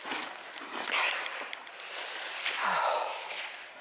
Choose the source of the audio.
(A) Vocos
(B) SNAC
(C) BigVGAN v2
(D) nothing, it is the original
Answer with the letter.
D